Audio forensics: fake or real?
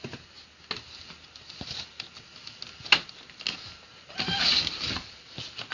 real